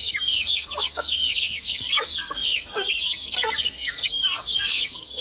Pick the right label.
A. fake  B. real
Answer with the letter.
A